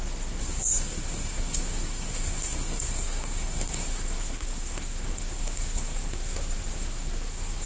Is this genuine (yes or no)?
no